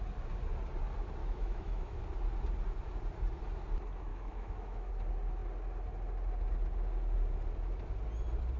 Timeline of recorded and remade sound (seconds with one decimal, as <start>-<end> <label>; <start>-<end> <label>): 0.0-1.2 recorded; 1.2-2.0 remade; 2.0-4.1 recorded; 4.1-4.9 remade; 4.9-8.6 recorded